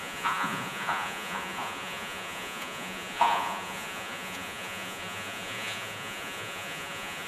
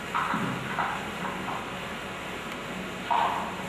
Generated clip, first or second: first